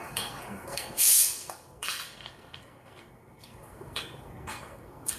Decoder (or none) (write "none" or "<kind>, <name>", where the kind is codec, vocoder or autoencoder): codec, SNAC